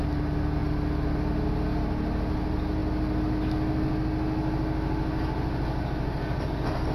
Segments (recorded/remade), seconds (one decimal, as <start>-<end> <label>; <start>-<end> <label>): 0.0-6.9 recorded